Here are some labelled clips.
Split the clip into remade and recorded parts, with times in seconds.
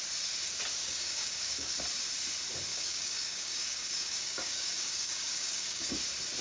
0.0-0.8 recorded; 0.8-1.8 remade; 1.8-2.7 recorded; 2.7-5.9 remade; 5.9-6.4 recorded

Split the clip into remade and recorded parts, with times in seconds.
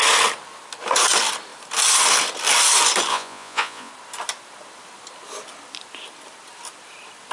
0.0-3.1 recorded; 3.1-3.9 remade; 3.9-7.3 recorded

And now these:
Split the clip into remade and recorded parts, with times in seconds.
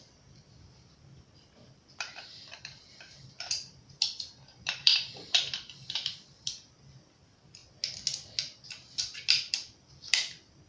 0.0-7.6 remade; 7.6-9.5 recorded; 9.5-10.7 remade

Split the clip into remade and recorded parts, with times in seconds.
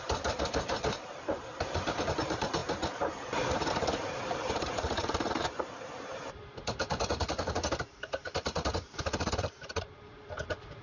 0.0-2.6 remade; 2.6-3.7 recorded; 3.7-10.8 remade